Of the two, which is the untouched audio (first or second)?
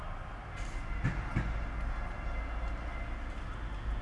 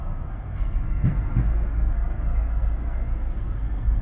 first